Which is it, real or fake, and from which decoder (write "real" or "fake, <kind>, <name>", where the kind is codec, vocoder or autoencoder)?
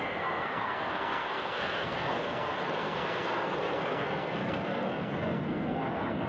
fake, codec, SNAC